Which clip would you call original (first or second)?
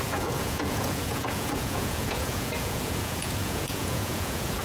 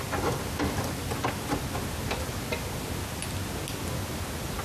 second